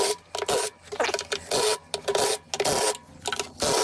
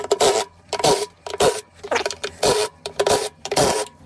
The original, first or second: first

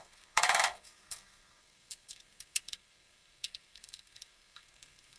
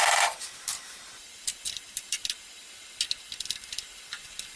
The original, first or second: second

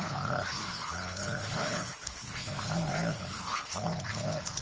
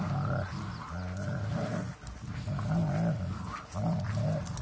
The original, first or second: second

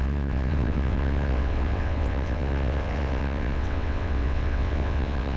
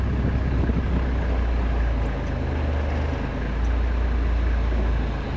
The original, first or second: second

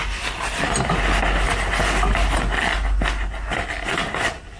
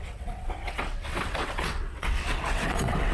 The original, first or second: first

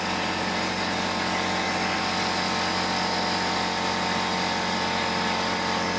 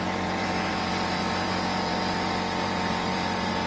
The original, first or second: first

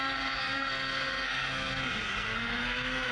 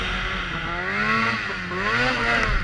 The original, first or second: second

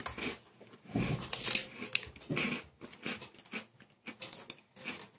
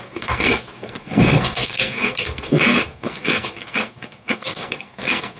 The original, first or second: first